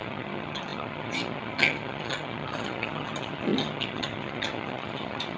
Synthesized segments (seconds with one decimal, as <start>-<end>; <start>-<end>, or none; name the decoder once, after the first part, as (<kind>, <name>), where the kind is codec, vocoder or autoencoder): 0.0-5.4 (vocoder, HiFi-GAN)